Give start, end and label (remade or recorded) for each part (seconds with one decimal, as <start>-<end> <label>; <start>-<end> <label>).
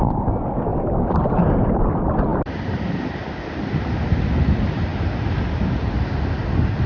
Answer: 0.0-0.7 recorded; 0.7-1.3 remade; 1.3-2.3 recorded; 2.3-3.7 remade; 3.7-6.9 recorded